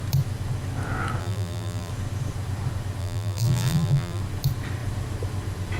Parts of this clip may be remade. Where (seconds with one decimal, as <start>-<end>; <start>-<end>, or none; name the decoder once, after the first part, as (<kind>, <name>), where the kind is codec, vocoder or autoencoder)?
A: 1.2-1.9 (vocoder, BigVGAN v2); 3.0-4.2

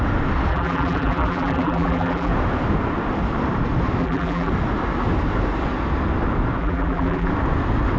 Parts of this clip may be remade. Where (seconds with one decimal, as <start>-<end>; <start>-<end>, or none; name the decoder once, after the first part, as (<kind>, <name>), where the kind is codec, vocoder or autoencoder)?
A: 0.5-2.3 (vocoder, BigVGAN v2); 4.0-4.5; 6.6-7.3

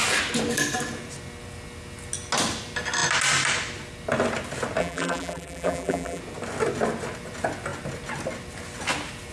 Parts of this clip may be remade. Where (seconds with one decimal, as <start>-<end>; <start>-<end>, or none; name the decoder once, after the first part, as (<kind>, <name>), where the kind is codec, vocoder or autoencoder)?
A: 4.8-6.2 (vocoder, BigVGAN v2)

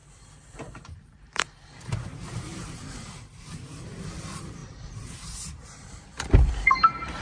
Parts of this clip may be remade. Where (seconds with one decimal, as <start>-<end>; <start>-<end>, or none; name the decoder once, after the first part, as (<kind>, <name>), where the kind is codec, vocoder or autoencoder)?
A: 0.0-7.2 (vocoder, BigVGAN v2)

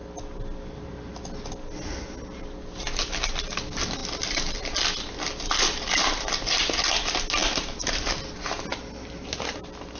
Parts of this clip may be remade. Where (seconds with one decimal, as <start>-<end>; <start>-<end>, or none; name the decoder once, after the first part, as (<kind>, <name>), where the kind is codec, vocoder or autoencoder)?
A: 4.0-6.9 (vocoder, BigVGAN v2); 7.4-8.1

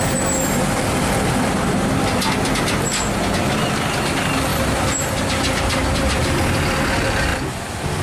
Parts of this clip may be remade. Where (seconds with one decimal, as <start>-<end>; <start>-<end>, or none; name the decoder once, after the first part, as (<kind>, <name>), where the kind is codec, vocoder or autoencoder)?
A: 4.5-6.2 (vocoder, BigVGAN v2); 7.3-8.0

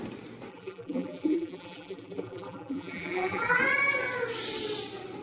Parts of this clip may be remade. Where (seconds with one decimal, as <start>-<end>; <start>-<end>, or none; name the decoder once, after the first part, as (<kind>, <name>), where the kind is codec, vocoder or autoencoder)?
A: 0.5-3.6 (vocoder, BigVGAN v2)